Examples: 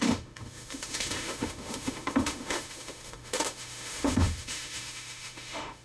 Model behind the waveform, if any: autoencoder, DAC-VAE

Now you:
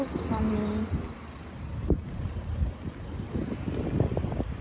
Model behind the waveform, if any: none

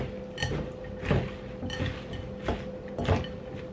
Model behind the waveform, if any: none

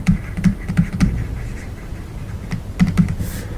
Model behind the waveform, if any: none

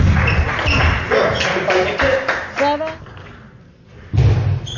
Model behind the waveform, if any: none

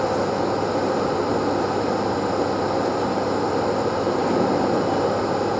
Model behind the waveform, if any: none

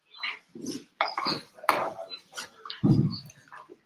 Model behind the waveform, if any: vocoder, BigVGAN v2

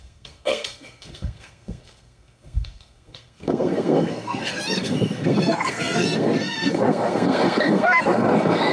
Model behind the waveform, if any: codec, SNAC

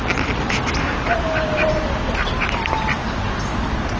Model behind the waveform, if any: none